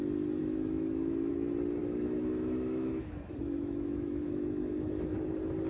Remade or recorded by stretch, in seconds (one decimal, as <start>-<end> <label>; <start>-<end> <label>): 0.0-0.4 recorded; 0.4-1.3 remade; 1.3-1.8 recorded; 1.8-5.2 remade; 5.2-5.7 recorded